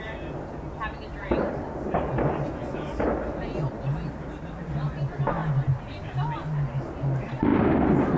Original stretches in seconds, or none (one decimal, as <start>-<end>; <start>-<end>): 0.0-8.2